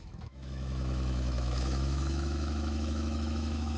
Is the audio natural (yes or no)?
no